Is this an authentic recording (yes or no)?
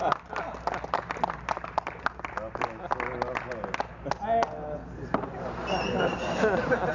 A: yes